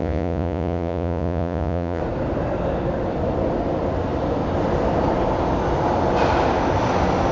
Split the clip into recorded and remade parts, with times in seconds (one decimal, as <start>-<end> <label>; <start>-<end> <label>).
0.0-2.0 remade; 2.0-7.3 recorded